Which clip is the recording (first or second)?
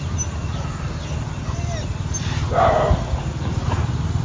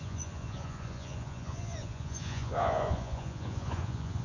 first